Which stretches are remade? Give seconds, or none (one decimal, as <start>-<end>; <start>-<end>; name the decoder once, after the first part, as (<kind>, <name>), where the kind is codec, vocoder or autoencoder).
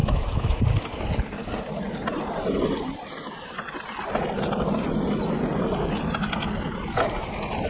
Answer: 0.0-0.6 (autoencoder, DAC-VAE)